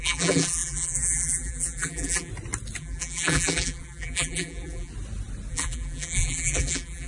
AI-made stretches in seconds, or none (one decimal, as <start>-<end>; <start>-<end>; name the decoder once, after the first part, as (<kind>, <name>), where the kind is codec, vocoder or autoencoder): 0.0-2.3 (vocoder, BigVGAN v2); 2.8-4.9; 5.5-7.1